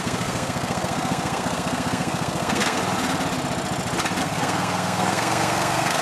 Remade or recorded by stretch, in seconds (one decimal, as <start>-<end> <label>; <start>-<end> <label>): 0.0-2.8 remade; 2.8-4.2 recorded; 4.2-6.0 remade